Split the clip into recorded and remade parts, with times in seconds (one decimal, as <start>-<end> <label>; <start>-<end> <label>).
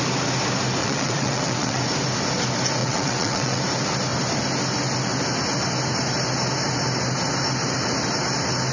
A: 0.0-0.8 recorded; 0.8-1.8 remade; 1.8-2.8 recorded; 2.8-3.6 remade; 3.6-8.7 recorded